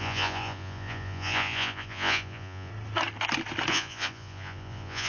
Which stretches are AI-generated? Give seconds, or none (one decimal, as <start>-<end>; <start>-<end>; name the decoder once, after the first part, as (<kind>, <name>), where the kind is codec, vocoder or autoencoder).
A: 0.0-2.7 (vocoder, Vocos); 3.7-5.1